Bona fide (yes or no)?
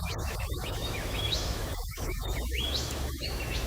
no